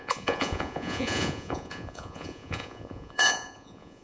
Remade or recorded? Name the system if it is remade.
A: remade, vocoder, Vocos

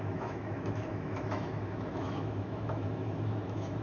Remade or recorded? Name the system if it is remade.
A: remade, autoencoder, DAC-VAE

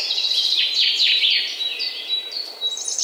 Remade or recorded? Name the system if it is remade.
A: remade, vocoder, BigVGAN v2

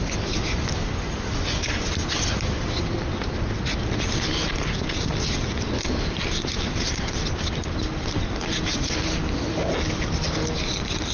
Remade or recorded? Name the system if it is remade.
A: recorded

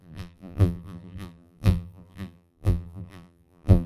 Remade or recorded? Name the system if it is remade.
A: remade, vocoder, BigVGAN v2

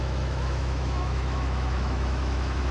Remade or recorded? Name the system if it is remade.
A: remade, autoencoder, DAC-VAE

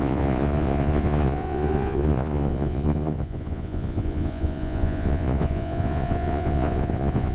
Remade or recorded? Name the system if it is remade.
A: remade, vocoder, Vocos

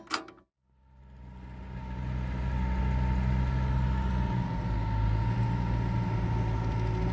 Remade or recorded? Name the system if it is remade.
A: recorded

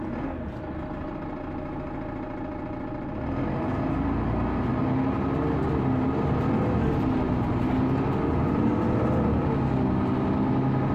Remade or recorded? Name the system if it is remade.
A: recorded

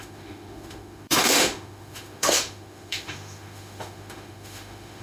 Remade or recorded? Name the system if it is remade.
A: remade, autoencoder, DAC-VAE